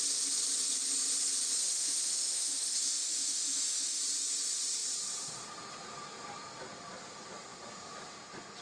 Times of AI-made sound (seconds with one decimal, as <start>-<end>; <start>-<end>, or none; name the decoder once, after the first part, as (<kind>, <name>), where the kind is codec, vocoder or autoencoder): 1.6-4.0 (autoencoder, DAC-VAE)